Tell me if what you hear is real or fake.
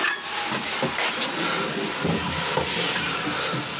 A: real